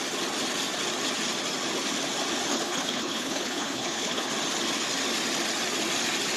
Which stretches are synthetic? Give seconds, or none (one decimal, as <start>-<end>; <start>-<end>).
2.5-4.3